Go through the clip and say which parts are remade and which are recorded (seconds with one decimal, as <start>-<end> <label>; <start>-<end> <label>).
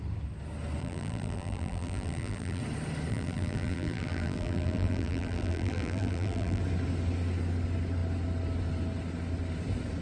0.0-0.8 recorded; 0.8-2.6 remade; 2.6-3.1 recorded; 3.1-6.6 remade; 6.6-10.0 recorded